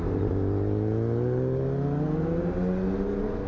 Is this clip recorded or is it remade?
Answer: recorded